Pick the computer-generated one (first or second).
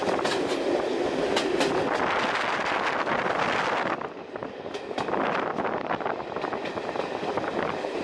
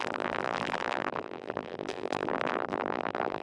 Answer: second